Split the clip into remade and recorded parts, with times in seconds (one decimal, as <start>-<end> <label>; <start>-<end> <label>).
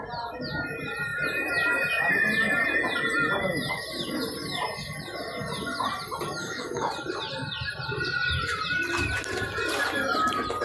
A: 0.0-6.4 recorded; 6.4-6.9 remade; 6.9-10.6 recorded